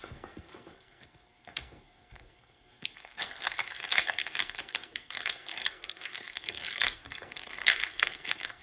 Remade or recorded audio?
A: remade